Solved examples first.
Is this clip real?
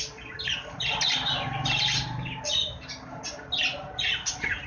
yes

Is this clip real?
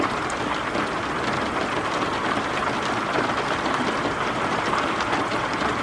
yes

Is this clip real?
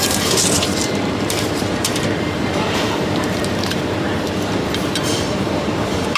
no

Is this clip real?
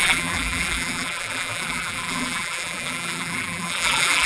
no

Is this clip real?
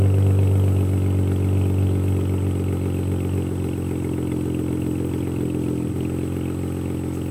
yes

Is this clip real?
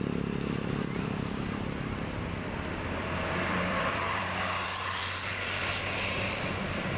no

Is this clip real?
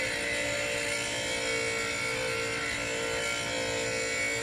yes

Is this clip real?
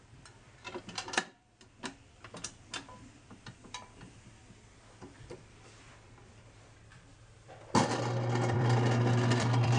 no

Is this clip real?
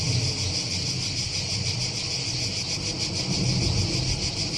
yes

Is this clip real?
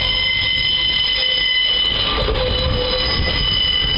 yes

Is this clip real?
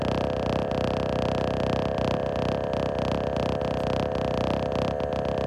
yes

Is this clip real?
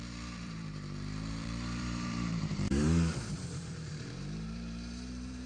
no